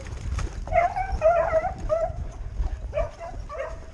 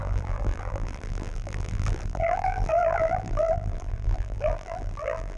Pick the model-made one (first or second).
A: second